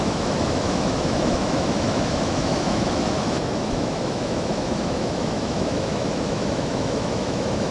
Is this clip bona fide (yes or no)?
no